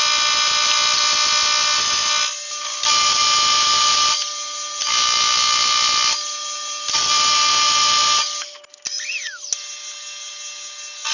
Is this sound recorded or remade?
recorded